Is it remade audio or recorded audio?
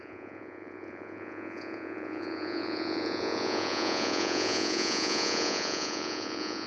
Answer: remade